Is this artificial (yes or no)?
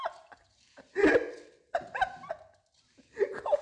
no